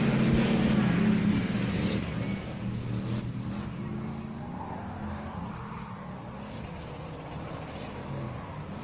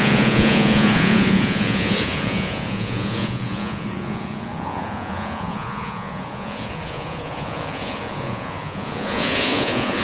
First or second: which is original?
first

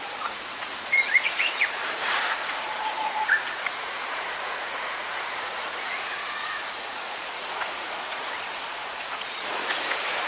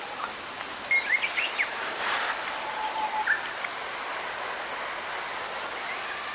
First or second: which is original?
second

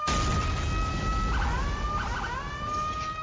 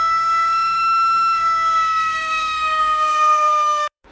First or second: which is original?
first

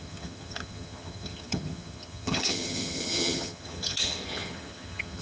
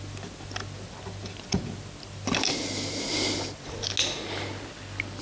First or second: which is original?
second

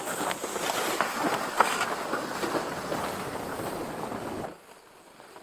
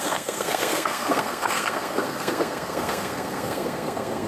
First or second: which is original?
first